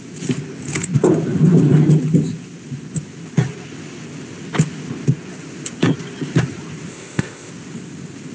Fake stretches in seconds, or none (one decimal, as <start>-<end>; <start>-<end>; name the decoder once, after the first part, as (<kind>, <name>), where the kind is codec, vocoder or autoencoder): 6.9-7.5 (codec, ZipCodec)